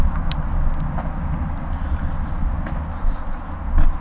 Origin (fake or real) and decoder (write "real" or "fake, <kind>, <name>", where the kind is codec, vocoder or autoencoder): real